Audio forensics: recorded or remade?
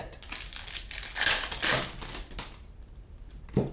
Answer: recorded